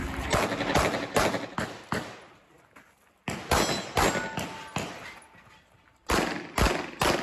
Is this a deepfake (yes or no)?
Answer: no